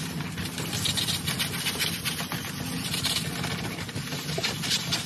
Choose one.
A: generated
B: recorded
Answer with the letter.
B